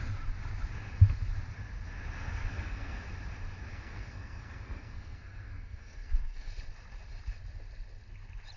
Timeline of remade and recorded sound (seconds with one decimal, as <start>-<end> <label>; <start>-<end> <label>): 0.0-2.3 recorded; 2.3-3.0 remade; 3.0-3.7 recorded; 3.7-6.5 remade; 6.5-8.6 recorded